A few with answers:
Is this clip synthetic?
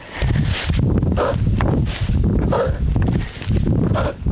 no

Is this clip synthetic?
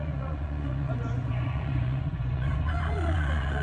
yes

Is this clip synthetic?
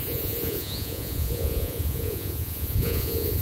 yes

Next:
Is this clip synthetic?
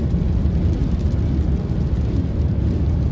no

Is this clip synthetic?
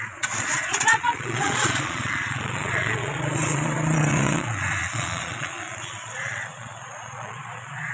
yes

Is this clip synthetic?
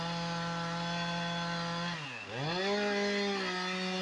no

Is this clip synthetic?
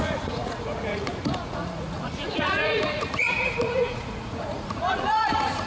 yes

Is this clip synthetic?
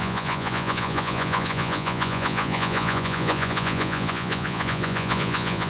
yes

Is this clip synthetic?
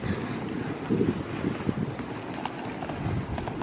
no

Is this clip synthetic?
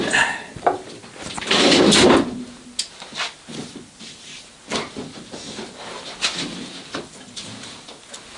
no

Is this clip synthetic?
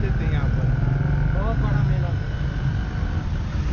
no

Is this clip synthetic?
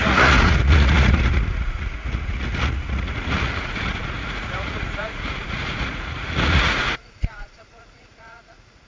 yes